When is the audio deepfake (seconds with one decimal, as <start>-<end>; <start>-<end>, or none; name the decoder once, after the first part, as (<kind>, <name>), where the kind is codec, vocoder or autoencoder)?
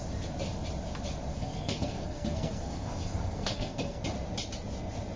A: 1.3-4.0 (codec, SNAC)